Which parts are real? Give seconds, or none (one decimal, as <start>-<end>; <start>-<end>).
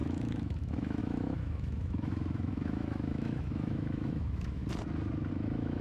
4.6-5.3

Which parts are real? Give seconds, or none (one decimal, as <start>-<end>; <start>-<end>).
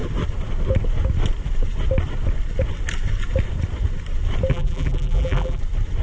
0.0-4.5; 5.6-6.0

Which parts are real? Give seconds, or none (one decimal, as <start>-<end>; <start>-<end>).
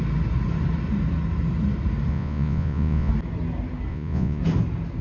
0.0-2.1; 3.1-3.9; 4.4-5.0